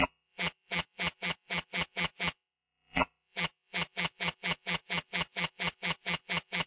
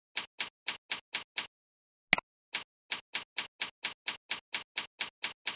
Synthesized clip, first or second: first